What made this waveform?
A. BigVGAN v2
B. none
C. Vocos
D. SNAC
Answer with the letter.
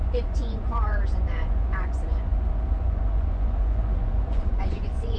C